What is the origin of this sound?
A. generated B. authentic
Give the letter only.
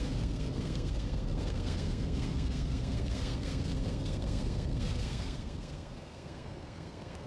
A